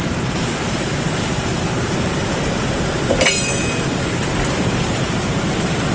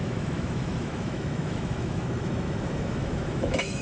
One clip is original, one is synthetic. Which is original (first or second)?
first